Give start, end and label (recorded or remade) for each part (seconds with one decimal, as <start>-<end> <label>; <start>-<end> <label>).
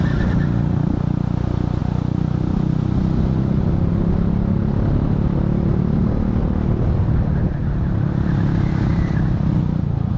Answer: 0.0-6.4 recorded; 6.4-7.6 remade; 7.6-8.9 recorded; 8.9-9.5 remade; 9.5-10.2 recorded